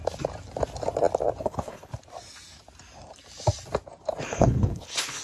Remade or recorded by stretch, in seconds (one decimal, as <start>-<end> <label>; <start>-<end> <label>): 0.0-1.4 recorded; 1.4-1.9 remade; 1.9-4.2 recorded; 4.2-5.2 remade